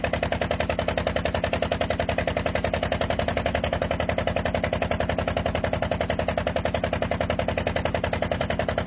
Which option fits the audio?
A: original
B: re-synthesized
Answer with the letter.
A